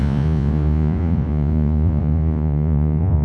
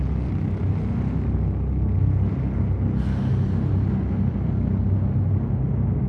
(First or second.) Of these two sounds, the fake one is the first